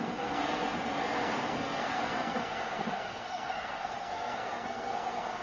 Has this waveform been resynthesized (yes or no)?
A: yes